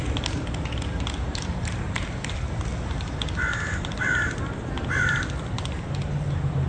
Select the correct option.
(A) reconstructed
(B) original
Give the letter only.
B